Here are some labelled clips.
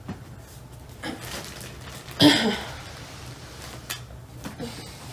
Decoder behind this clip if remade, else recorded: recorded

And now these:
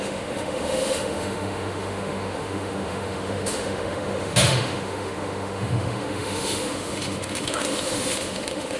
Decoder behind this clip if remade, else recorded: remade, autoencoder, DAC-VAE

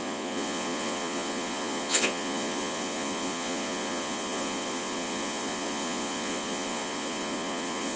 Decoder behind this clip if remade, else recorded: remade, vocoder, Vocos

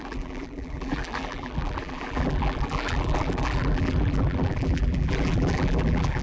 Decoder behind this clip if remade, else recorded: remade, vocoder, BigVGAN v2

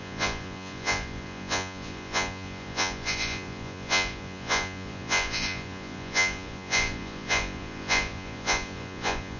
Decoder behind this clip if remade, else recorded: remade, vocoder, Vocos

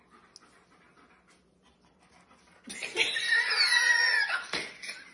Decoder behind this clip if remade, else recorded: recorded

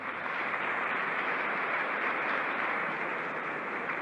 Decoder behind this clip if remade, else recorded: remade, vocoder, BigVGAN v2